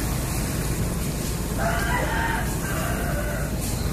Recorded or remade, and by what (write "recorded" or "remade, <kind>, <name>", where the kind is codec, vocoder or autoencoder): recorded